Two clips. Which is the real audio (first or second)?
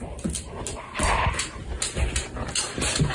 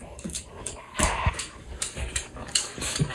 first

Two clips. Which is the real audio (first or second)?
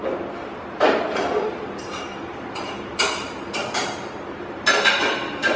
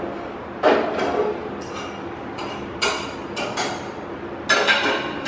second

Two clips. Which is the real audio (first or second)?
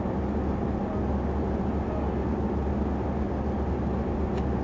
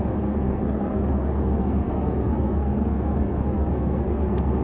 first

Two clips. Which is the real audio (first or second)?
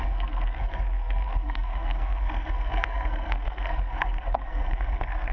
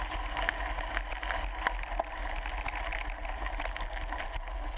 second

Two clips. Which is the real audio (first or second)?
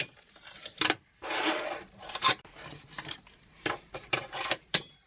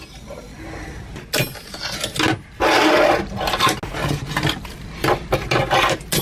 second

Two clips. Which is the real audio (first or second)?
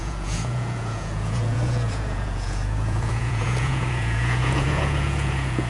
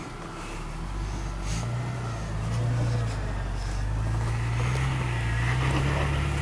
second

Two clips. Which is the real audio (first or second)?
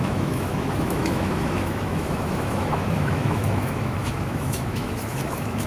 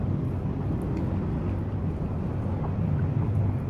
second